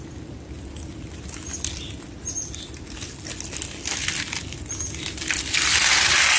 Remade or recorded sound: recorded